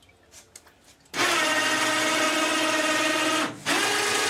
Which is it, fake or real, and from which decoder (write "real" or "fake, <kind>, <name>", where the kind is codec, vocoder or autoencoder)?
real